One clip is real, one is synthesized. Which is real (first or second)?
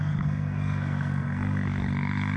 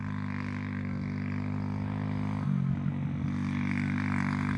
second